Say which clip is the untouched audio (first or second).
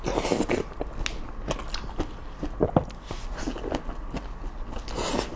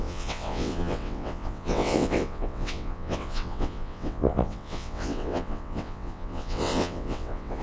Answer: first